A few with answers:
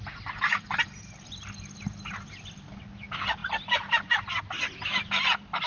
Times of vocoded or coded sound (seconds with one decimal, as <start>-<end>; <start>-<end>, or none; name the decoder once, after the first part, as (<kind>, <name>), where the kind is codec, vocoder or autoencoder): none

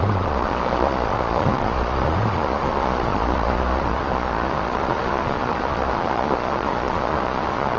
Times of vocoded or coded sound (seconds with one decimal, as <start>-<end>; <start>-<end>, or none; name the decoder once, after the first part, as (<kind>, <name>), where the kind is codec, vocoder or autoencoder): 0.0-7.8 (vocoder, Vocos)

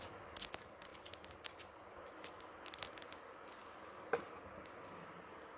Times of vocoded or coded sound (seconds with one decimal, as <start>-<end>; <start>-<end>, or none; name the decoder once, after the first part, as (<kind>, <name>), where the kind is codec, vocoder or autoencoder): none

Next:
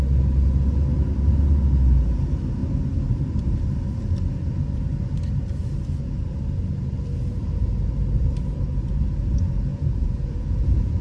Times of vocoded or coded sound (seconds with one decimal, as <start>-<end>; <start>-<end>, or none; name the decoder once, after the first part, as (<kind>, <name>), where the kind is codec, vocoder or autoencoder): 9.7-11.0 (vocoder, Vocos)

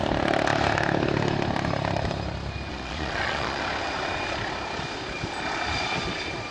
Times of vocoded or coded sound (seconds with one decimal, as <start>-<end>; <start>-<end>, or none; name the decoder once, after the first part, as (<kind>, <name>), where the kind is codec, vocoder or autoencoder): 2.7-3.6 (vocoder, Vocos)

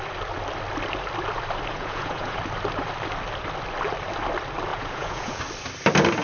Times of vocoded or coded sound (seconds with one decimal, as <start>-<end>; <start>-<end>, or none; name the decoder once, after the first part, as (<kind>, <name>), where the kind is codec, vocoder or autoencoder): 1.7-2.4 (vocoder, Vocos); 4.7-5.4